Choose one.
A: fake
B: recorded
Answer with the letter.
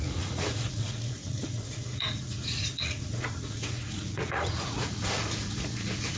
A